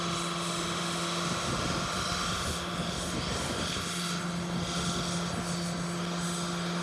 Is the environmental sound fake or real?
real